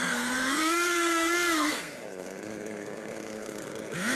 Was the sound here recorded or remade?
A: remade